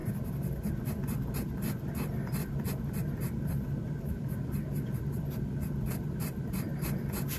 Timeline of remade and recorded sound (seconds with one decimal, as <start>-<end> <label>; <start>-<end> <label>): 0.0-2.4 recorded; 2.4-6.8 remade; 6.8-7.4 recorded